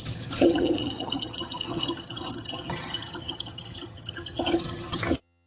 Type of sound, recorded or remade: remade